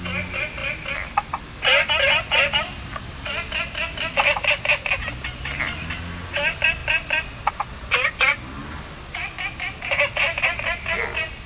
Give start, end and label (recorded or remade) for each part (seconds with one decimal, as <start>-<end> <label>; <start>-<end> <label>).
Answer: 0.0-11.5 recorded